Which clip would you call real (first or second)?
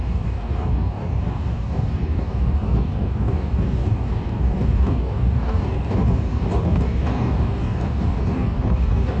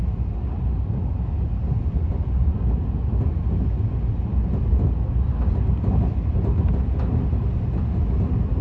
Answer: second